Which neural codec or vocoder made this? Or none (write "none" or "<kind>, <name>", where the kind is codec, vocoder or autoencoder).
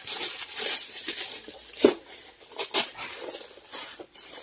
vocoder, BigVGAN v2